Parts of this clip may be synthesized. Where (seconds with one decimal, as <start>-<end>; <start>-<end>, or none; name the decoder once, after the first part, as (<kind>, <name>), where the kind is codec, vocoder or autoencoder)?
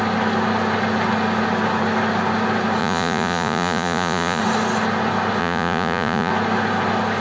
2.8-4.4 (vocoder, Vocos); 5.4-6.3